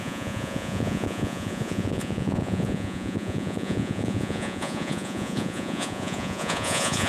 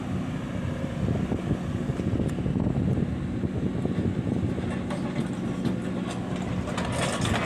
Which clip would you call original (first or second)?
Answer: second